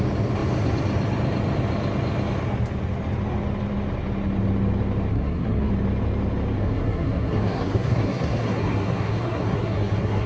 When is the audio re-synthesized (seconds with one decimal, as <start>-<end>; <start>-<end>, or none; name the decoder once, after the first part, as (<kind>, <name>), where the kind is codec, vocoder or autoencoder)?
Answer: 5.1-5.7 (codec, SNAC); 6.6-10.3